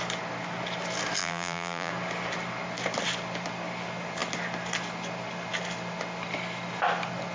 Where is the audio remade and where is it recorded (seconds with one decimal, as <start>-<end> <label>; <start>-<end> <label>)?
0.0-1.2 recorded; 1.2-1.9 remade; 1.9-7.3 recorded